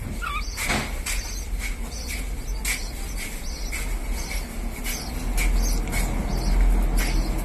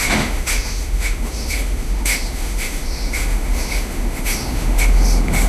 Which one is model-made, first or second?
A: second